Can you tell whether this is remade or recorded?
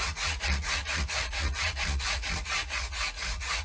remade